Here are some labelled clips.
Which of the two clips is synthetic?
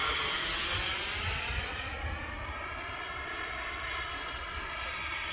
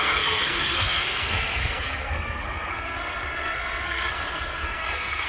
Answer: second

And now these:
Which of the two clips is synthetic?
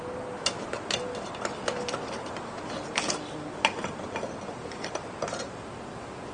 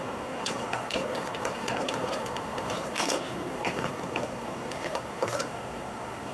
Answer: second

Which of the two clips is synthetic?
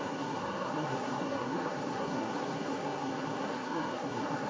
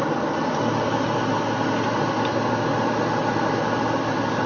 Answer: first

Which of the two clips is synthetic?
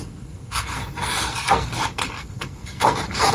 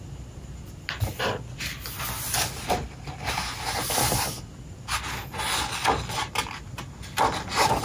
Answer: first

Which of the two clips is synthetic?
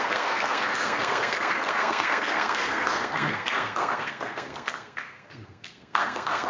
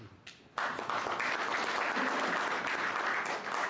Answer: first